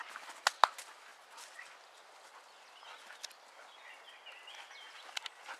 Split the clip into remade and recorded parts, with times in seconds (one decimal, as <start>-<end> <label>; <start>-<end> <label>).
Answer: 0.0-5.6 recorded